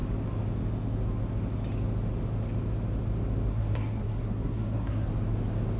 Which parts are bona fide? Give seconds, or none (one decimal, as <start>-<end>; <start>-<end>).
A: 0.0-3.5; 5.1-5.8